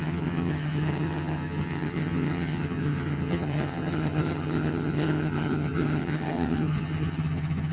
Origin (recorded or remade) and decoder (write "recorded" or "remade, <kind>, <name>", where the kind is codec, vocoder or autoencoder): remade, vocoder, HiFi-GAN